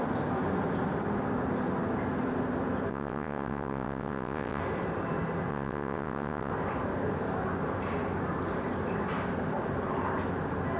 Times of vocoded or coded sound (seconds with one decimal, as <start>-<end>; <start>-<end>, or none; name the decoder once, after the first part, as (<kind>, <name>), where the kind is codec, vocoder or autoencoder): 2.9-4.6 (vocoder, WaveNeXt); 5.5-6.5